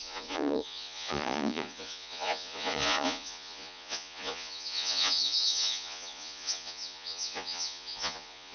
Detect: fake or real fake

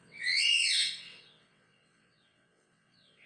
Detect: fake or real fake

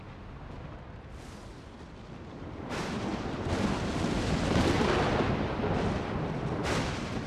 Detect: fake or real real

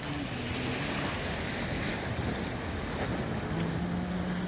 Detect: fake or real real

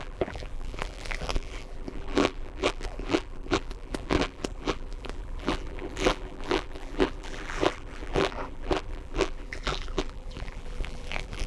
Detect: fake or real fake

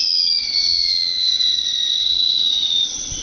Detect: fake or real fake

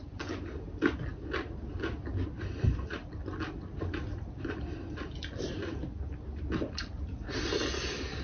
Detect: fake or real real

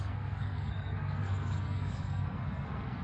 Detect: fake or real fake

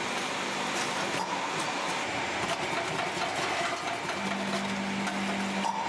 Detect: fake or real real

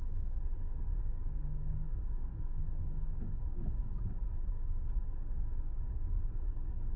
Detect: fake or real fake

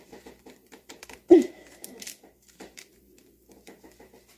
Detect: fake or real fake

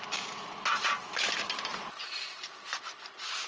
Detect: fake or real real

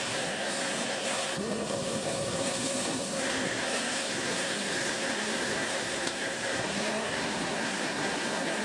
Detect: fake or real fake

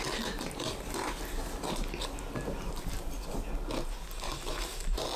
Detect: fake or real real